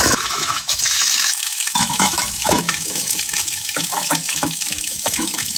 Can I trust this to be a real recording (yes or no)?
no